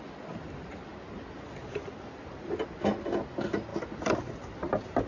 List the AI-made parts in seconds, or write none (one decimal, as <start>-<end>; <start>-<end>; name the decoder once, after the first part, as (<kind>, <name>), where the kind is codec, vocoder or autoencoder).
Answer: none